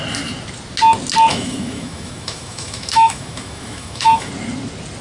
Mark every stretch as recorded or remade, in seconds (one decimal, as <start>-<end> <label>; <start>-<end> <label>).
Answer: 0.0-1.3 recorded; 1.3-4.3 remade; 4.3-5.0 recorded